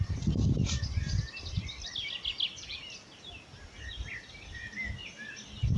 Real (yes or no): yes